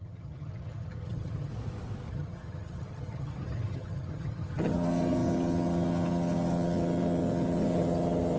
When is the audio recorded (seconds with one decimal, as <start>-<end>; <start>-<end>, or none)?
1.5-2.1